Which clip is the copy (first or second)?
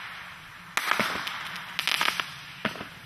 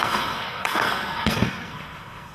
second